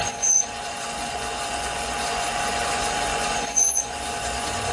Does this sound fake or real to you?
fake